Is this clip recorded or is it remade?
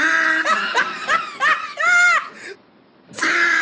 remade